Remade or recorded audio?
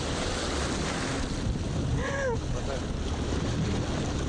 recorded